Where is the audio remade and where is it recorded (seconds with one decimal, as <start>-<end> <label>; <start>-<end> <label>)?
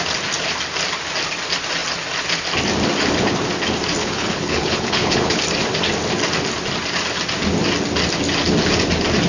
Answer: 0.0-4.0 recorded; 4.0-5.4 remade; 5.4-9.3 recorded